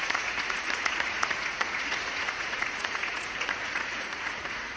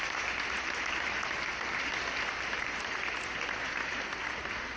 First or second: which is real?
second